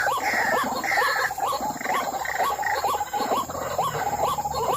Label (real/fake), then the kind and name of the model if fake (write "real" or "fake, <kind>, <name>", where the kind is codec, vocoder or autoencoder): real